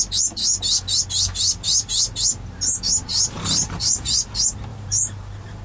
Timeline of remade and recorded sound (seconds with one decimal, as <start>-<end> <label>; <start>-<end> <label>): 0.0-3.1 recorded; 3.1-4.1 remade; 4.1-4.7 recorded; 4.7-5.6 remade